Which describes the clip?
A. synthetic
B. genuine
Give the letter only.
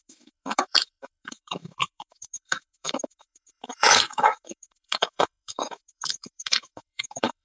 A